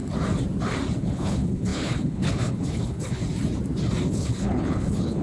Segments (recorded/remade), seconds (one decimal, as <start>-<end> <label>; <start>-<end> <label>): 0.0-1.0 recorded; 1.0-3.2 remade; 3.2-4.1 recorded; 4.1-5.2 remade